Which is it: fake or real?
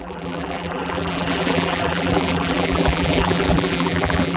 fake